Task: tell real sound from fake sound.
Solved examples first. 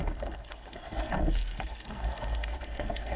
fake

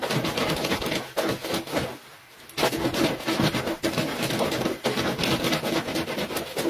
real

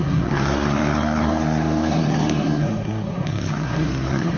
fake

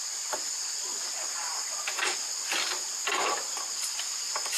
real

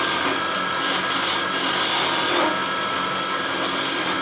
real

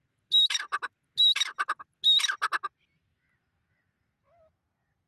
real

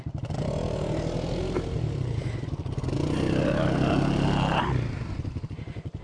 real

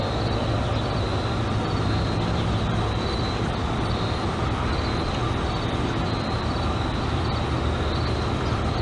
real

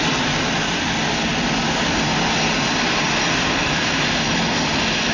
real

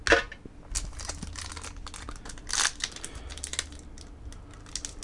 real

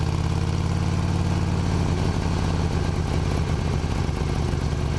real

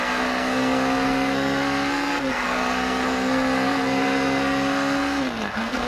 fake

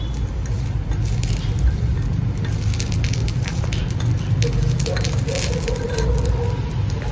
real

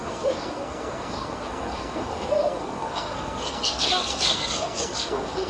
fake